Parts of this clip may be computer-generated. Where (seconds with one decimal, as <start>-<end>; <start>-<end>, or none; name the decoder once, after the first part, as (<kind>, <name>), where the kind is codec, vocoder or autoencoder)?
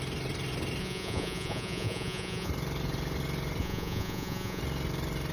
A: 0.8-2.5 (vocoder, Vocos); 3.6-4.6